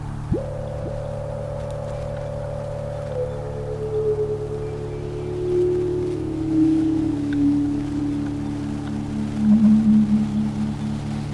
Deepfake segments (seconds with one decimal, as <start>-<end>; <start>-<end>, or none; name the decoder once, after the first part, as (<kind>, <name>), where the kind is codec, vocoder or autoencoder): 5.9-8.0 (codec, DAC)